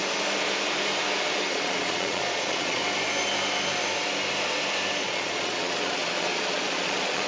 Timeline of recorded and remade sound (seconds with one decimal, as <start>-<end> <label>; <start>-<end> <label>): 0.0-1.5 recorded; 1.5-2.8 remade; 2.8-5.0 recorded; 5.0-7.3 remade